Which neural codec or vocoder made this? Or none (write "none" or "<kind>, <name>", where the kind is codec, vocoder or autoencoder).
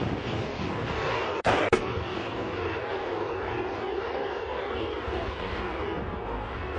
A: codec, DAC